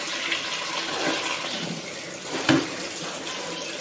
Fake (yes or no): no